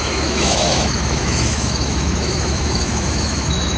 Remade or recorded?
remade